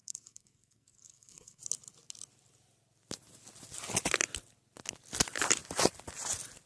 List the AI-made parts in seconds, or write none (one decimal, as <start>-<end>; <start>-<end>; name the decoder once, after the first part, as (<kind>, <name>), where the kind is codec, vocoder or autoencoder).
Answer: 0.0-1.6 (codec, SNAC)